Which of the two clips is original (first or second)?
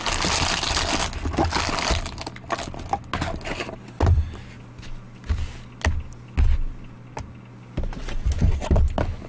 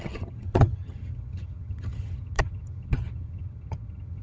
first